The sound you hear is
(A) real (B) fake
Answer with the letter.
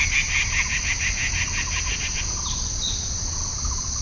A